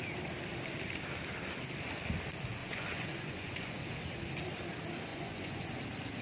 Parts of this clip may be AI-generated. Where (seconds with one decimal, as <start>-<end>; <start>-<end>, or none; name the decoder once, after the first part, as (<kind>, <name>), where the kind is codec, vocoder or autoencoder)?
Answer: 2.6-3.8 (vocoder, Vocos); 5.1-5.8